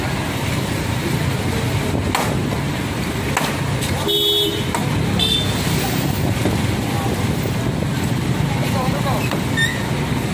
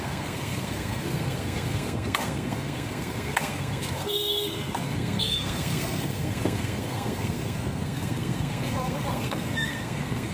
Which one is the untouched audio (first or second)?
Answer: first